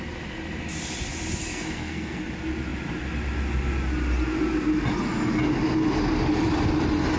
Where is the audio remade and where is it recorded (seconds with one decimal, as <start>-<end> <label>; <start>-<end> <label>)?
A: 0.0-1.4 recorded; 1.4-2.2 remade; 2.2-7.2 recorded

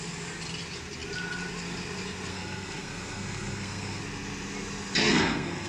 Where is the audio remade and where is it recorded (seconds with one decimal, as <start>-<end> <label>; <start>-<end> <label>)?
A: 0.0-2.3 recorded; 2.3-4.0 remade; 4.0-5.0 recorded; 5.0-5.7 remade

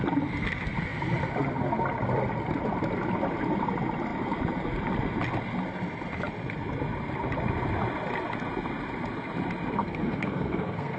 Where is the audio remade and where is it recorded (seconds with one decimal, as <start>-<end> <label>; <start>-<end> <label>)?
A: 0.0-9.8 recorded; 9.8-11.0 remade